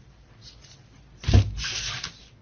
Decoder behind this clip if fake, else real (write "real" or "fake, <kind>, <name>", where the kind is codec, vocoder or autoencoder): real